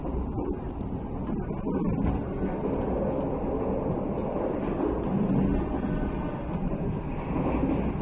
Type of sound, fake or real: real